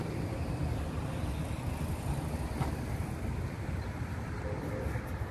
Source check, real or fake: real